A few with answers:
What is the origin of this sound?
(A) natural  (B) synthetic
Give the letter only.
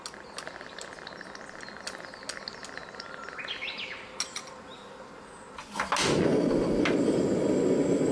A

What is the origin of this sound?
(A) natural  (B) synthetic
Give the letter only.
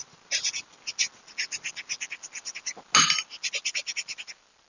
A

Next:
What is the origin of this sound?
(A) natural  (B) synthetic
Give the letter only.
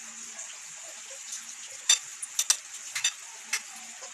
A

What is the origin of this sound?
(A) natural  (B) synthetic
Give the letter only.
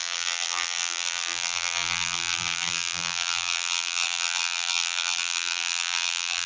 B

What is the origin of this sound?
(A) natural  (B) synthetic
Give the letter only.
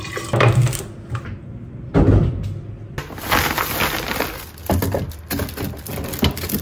A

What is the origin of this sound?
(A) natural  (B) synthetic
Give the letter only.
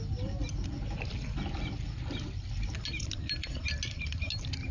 A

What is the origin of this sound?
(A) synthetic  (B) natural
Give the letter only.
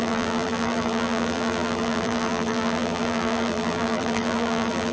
A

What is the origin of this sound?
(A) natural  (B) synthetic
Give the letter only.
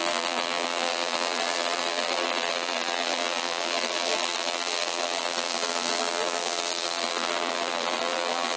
B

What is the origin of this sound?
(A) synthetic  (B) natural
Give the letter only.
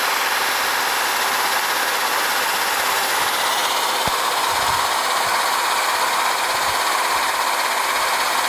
B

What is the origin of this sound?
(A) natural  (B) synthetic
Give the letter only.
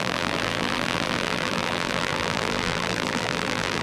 B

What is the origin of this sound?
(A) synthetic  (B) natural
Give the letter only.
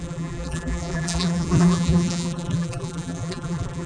A